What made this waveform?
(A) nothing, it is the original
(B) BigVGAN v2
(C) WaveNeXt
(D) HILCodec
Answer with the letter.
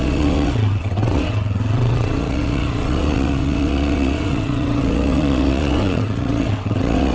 C